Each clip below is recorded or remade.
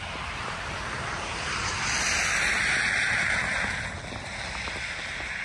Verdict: recorded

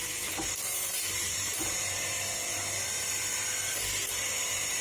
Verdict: remade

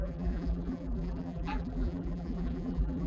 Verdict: remade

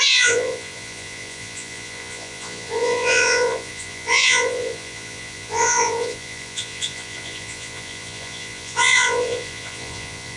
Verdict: remade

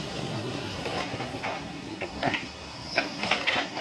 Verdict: remade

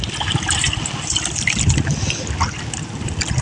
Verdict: recorded